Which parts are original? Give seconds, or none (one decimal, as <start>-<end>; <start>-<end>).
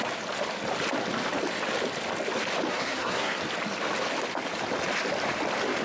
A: 0.0-2.7; 3.4-5.8